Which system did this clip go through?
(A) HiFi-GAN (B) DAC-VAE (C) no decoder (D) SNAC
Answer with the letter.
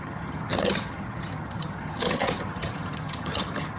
A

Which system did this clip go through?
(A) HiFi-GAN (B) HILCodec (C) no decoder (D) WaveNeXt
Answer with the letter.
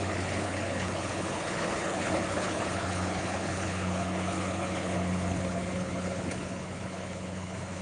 B